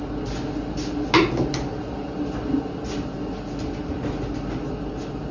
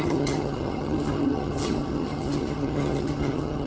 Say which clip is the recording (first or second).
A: first